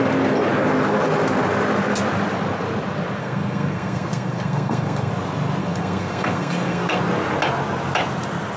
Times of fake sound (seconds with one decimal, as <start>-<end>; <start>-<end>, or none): 3.2-5.1; 5.6-7.0